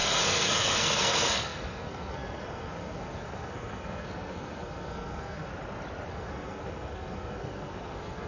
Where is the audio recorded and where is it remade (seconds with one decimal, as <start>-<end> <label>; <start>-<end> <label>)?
0.0-5.5 remade; 5.5-6.1 recorded; 6.1-8.3 remade